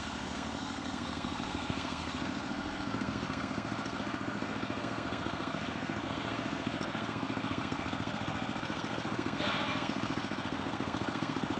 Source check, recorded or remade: remade